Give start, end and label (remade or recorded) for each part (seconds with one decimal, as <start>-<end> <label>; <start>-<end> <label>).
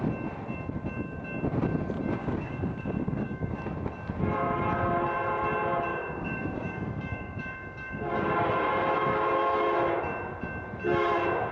0.0-2.2 recorded; 2.2-3.6 remade; 3.6-5.9 recorded; 5.9-8.5 remade; 8.5-11.5 recorded